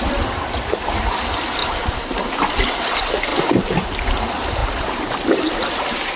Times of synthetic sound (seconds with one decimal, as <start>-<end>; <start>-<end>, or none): 1.6-2.8; 3.3-4.0